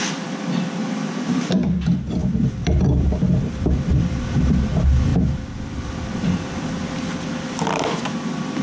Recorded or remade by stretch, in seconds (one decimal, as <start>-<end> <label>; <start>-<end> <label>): 0.0-8.6 remade